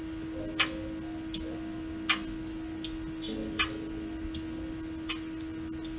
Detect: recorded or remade recorded